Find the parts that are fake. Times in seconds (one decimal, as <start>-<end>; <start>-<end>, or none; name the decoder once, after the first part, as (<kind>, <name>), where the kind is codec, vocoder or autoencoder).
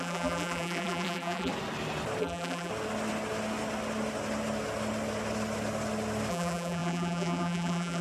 0.0-1.5 (vocoder, BigVGAN v2); 2.2-2.7; 6.3-8.0